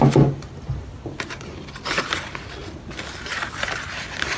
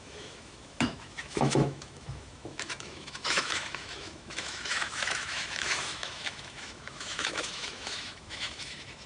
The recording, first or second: first